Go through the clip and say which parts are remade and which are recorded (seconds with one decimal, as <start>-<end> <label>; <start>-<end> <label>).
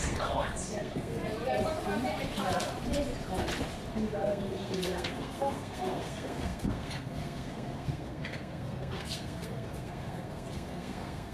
0.0-1.2 remade; 1.2-3.9 recorded; 3.9-11.3 remade